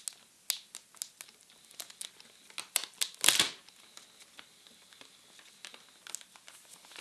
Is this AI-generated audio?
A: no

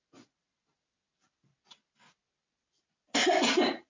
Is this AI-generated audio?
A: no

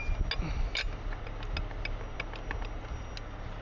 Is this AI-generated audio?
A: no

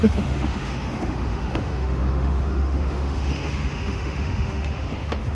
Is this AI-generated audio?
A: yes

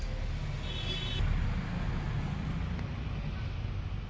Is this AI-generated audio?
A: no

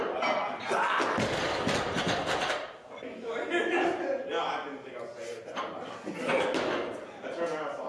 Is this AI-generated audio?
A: no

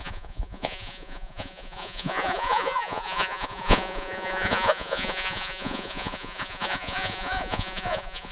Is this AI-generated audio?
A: yes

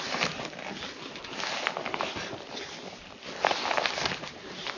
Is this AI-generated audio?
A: no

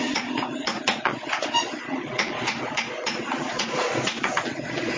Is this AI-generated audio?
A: yes